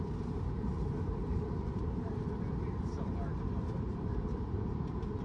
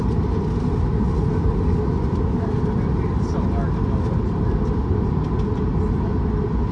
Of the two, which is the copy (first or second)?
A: first